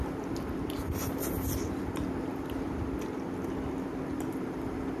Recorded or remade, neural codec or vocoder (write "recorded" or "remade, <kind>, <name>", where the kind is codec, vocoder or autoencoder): recorded